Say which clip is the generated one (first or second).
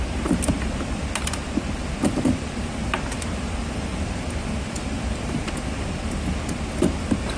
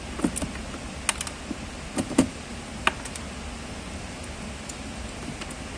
first